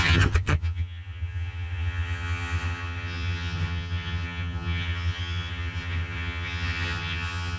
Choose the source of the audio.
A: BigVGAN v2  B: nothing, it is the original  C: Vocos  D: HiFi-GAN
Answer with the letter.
D